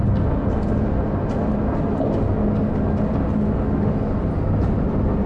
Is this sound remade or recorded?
recorded